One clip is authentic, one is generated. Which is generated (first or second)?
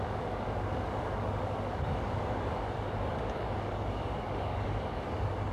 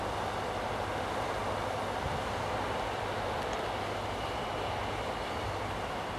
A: first